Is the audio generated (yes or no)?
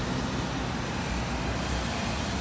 no